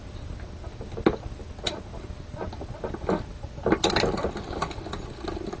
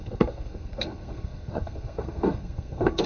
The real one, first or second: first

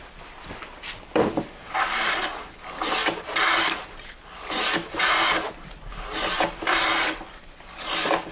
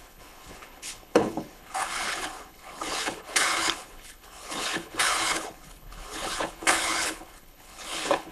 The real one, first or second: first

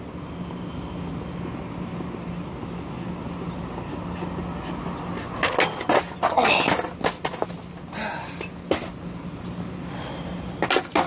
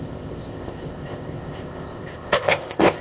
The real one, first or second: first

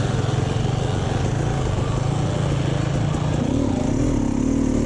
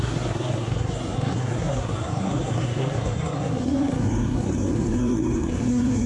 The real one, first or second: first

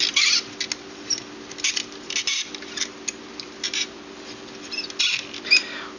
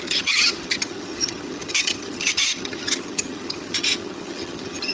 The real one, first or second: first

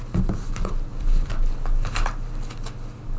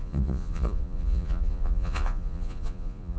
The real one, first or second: first